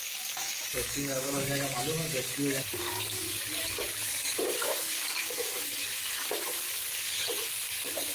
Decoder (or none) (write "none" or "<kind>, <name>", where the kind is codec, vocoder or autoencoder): codec, DAC